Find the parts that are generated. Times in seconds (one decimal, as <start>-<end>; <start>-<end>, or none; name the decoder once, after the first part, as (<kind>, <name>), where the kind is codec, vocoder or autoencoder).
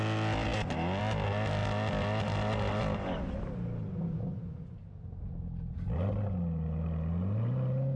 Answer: none